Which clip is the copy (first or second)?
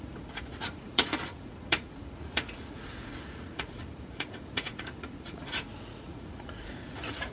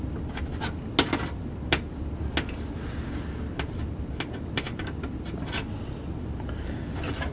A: first